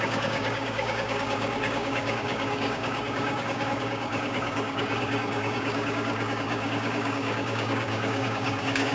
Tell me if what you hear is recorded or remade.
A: remade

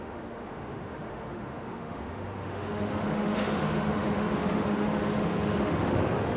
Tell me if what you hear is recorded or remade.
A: remade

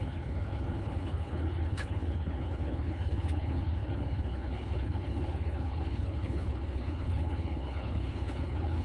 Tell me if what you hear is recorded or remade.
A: remade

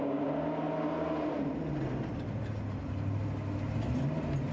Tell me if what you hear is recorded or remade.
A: recorded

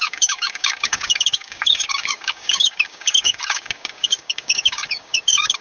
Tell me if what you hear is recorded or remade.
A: remade